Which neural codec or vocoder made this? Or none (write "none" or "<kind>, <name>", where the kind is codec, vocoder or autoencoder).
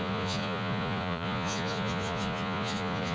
vocoder, Vocos